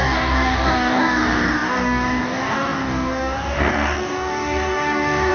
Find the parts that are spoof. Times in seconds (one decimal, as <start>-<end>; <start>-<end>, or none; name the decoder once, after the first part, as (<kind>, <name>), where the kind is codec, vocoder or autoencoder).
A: 0.0-5.3 (codec, DAC)